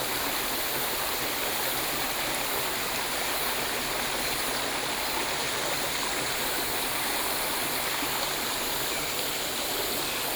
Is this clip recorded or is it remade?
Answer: recorded